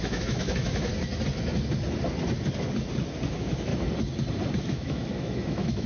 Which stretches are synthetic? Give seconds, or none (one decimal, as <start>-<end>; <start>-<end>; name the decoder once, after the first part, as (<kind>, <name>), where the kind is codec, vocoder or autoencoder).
0.0-0.9 (autoencoder, DAC-VAE); 3.3-3.7; 4.6-5.9